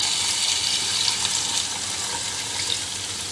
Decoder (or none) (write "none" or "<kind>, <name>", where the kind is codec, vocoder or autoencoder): vocoder, BigVGAN v2